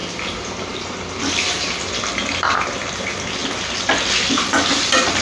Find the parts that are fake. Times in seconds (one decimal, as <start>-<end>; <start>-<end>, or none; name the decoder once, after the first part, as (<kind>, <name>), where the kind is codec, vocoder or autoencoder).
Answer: none